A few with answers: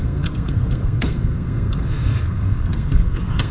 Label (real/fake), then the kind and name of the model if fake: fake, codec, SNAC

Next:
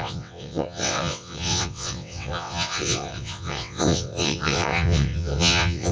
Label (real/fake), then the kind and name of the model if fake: fake, vocoder, WaveNeXt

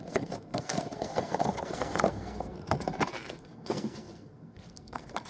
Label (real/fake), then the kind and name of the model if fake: fake, codec, SNAC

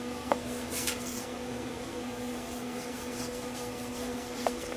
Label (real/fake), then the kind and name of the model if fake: fake, codec, SNAC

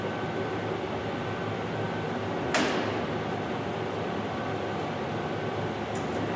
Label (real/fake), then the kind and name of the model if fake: real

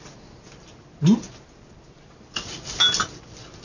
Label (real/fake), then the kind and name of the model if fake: real